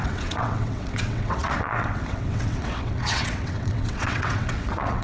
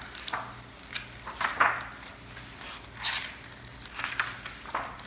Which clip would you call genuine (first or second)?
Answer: second